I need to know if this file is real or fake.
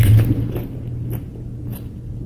real